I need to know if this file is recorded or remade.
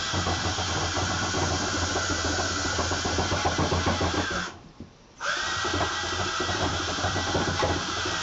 recorded